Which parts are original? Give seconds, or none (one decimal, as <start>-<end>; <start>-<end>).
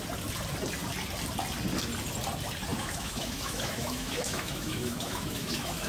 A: 0.0-2.7